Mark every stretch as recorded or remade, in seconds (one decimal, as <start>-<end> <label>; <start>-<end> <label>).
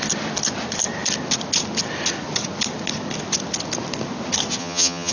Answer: 0.0-4.6 recorded; 4.6-5.1 remade